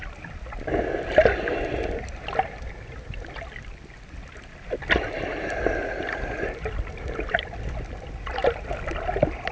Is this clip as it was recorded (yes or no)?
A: yes